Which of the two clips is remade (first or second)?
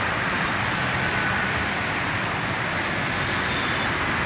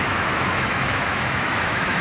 second